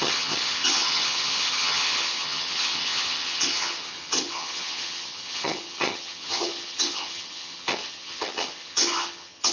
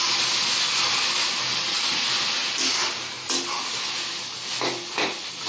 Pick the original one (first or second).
second